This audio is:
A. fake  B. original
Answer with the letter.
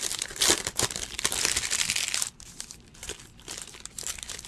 A